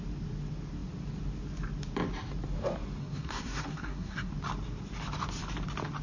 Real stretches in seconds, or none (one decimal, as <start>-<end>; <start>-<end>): 0.0-3.0; 4.3-6.0